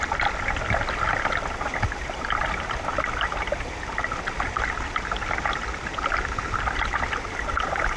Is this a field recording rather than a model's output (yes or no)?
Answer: yes